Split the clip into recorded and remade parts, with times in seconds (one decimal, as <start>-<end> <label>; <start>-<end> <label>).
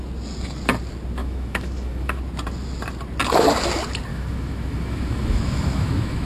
0.0-1.2 recorded; 1.2-2.2 remade; 2.2-4.1 recorded; 4.1-6.3 remade